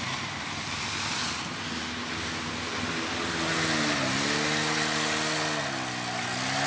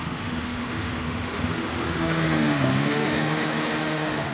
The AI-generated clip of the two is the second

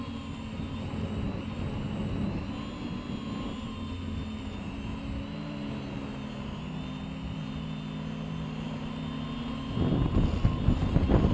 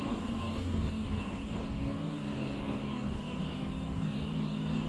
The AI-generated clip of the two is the second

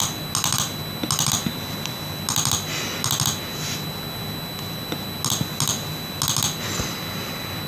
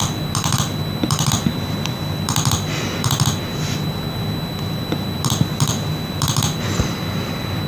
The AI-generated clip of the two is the second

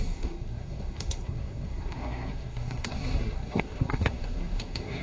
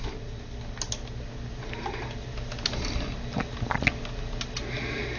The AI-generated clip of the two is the first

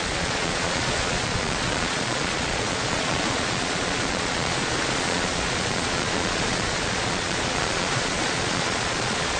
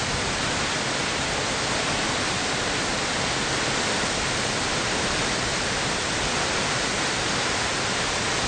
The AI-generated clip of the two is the first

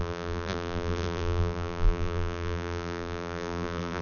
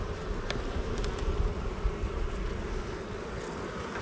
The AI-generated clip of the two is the first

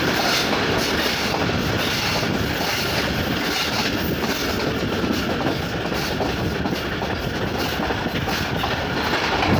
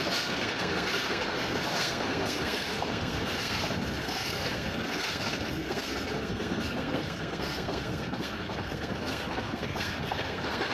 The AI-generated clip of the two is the second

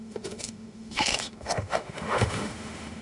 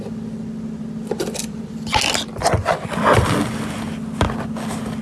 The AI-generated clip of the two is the first